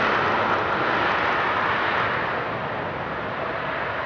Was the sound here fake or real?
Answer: real